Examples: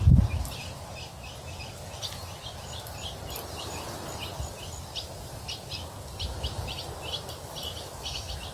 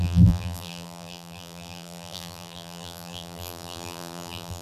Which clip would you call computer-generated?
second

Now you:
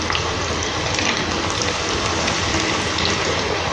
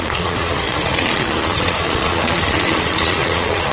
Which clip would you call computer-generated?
second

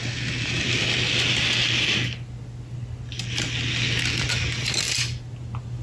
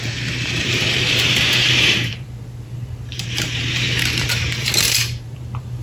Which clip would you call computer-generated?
second